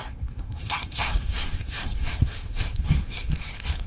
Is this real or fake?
fake